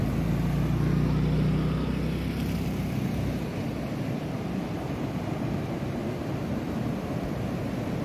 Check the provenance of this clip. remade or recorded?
recorded